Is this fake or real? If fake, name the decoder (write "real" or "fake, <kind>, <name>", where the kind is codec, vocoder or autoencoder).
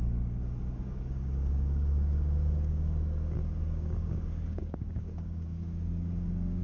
fake, codec, DAC